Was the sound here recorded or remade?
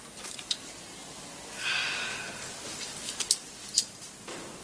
recorded